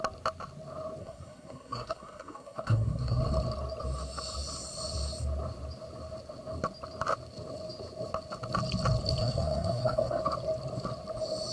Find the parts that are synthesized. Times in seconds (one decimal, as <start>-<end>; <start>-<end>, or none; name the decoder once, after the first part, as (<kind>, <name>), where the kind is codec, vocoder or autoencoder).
1.0-3.2 (codec, SNAC); 9.2-10.2